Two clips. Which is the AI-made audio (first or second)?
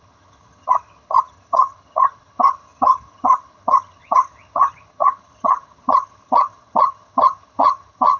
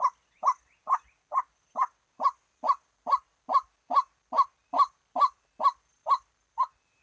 first